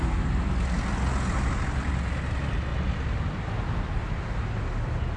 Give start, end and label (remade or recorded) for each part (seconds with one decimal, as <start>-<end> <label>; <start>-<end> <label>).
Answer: 0.0-5.2 recorded